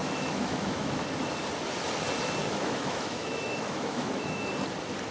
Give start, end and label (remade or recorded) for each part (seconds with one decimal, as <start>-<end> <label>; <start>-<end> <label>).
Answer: 0.0-1.0 remade; 1.0-2.4 recorded; 2.4-4.5 remade; 4.5-5.1 recorded